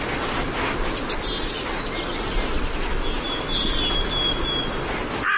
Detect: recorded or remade recorded